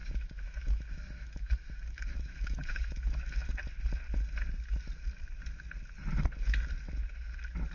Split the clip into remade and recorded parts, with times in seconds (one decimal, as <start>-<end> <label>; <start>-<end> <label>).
0.0-3.5 remade; 3.5-7.7 recorded